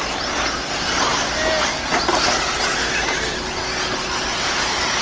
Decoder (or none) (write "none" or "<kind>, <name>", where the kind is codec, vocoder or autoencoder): none